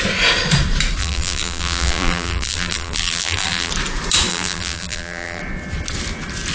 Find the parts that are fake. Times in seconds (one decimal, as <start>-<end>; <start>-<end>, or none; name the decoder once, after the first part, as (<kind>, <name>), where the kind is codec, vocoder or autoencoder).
1.0-3.7 (vocoder, BigVGAN v2); 4.3-5.4